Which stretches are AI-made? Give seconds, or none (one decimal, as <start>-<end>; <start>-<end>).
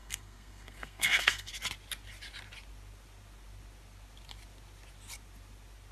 0.0-1.5